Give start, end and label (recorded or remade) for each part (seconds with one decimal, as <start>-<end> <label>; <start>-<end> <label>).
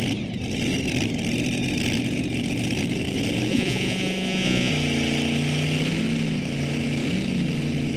0.0-3.5 recorded; 3.5-4.7 remade; 4.7-8.0 recorded